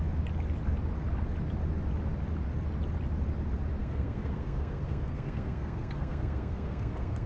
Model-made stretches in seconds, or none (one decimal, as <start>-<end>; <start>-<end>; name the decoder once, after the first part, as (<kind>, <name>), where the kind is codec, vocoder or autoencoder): 3.8-7.3 (codec, SNAC)